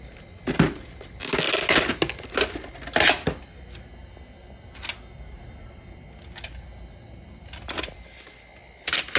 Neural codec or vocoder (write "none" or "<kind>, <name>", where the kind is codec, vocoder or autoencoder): none